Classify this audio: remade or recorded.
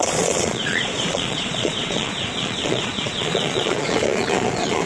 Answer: remade